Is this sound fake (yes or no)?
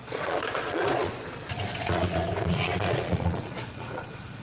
yes